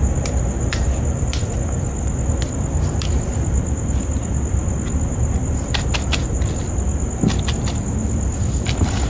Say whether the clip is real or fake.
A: real